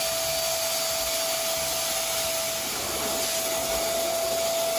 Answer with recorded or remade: recorded